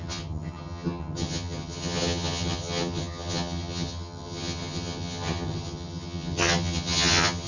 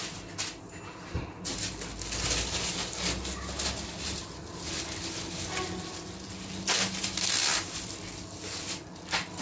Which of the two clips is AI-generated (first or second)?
first